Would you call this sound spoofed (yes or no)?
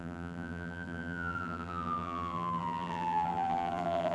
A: yes